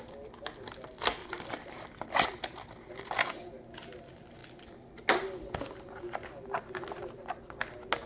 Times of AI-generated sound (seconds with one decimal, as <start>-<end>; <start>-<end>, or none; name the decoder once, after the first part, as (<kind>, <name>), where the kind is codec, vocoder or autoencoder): 1.2-2.9 (vocoder, BigVGAN v2); 4.4-6.0